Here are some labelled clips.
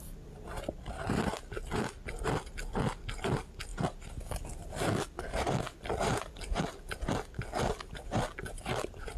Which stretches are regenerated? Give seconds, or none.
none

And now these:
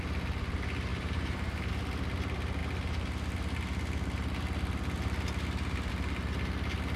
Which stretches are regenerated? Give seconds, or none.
0.9-1.7 (vocoder, BigVGAN v2)

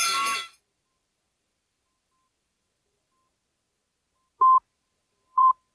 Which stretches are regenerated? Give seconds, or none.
0.0-3.2 (vocoder, BigVGAN v2); 4.7-5.7

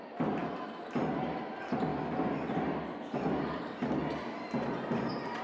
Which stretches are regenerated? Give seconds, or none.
1.9-2.6 (vocoder, BigVGAN v2)

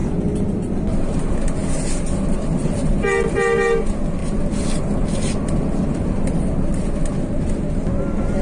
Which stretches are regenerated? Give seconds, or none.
0.0-1.2 (vocoder, BigVGAN v2); 4.2-6.9

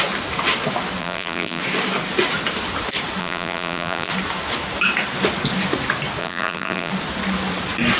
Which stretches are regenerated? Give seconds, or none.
1.0-1.6 (vocoder, BigVGAN v2); 3.2-4.1; 6.2-6.9

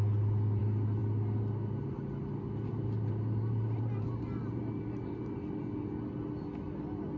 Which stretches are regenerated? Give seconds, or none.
2.7-5.6 (vocoder, BigVGAN v2)

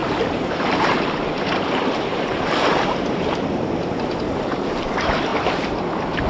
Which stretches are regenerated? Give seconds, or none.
0.0-5.3 (vocoder, BigVGAN v2)